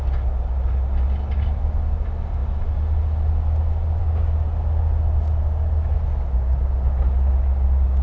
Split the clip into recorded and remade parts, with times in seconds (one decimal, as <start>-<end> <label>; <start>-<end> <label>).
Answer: 0.0-8.0 recorded